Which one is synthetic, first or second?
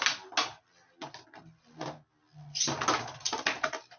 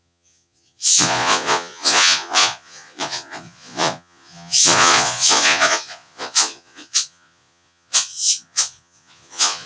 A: second